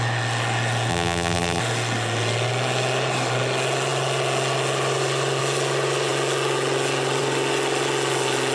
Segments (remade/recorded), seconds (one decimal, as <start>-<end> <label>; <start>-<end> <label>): 0.0-0.9 recorded; 0.9-1.6 remade; 1.6-8.5 recorded